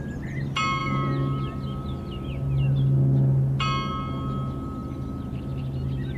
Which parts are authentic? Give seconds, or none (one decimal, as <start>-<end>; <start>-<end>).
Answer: 0.0-6.2